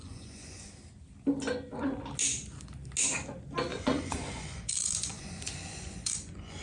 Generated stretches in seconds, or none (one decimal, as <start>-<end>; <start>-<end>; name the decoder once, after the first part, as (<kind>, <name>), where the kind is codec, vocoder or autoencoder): 0.0-0.7 (vocoder, Vocos); 3.7-6.6

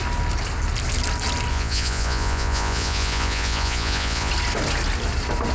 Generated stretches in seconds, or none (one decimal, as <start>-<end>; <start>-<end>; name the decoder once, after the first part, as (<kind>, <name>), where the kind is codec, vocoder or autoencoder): 1.5-4.3 (vocoder, Vocos)

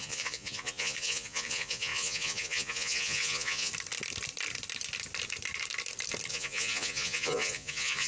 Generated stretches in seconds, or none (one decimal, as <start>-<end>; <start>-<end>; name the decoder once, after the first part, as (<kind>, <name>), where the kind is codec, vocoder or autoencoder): 0.0-3.7 (vocoder, Vocos); 6.3-8.1

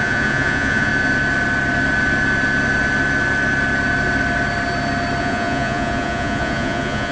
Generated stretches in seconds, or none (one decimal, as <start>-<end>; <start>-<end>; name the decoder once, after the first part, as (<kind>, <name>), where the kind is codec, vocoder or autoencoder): 0.0-0.9 (vocoder, Vocos); 5.2-7.1

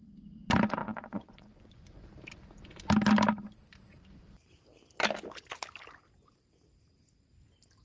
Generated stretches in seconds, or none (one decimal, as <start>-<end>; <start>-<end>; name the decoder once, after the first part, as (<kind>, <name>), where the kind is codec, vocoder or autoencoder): 0.8-2.1 (vocoder, Vocos)

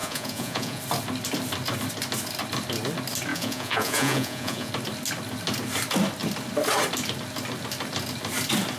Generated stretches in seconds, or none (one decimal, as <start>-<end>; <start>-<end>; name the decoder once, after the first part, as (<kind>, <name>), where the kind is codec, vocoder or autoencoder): 0.0-0.8 (vocoder, Vocos); 3.3-4.7